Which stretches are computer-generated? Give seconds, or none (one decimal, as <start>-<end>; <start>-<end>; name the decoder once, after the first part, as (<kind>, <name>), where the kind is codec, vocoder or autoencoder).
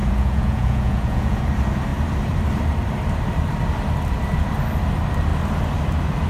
0.0-1.4 (vocoder, Vocos)